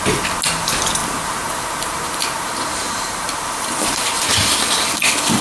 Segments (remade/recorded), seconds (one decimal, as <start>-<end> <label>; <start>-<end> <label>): 0.0-1.0 recorded; 1.0-4.2 remade; 4.2-5.4 recorded